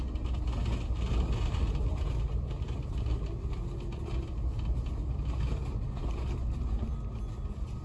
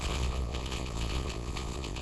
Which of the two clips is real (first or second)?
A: first